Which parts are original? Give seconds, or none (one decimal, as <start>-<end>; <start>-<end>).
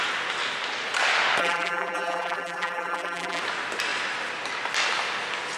0.0-1.4; 3.4-5.6